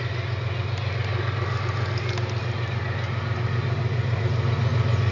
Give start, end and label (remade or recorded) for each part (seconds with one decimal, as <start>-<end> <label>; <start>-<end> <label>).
0.0-5.1 recorded